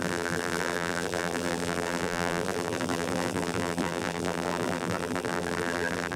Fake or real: fake